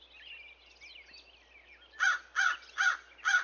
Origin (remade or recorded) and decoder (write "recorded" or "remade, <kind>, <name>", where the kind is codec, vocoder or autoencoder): recorded